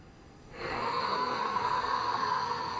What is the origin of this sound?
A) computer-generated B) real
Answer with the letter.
A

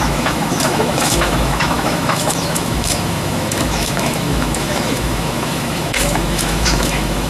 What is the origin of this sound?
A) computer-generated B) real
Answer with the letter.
A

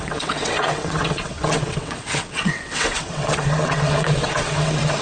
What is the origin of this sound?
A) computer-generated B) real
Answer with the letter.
A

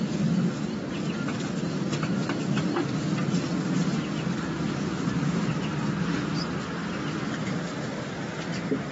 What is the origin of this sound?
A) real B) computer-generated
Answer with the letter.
A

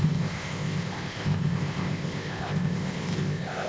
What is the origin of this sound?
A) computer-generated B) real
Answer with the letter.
A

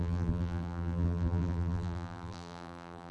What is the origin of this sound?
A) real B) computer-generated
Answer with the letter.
B